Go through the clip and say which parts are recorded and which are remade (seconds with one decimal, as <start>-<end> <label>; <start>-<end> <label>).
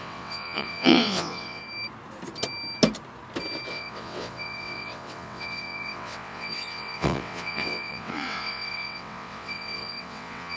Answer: 0.0-1.6 remade; 1.6-3.7 recorded; 3.7-10.6 remade